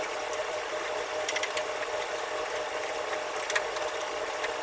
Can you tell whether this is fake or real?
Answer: real